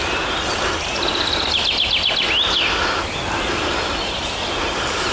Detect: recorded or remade recorded